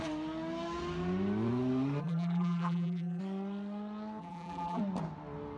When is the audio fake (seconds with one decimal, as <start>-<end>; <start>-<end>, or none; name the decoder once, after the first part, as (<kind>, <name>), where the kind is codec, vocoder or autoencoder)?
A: 2.0-3.2 (vocoder, BigVGAN v2); 4.2-4.8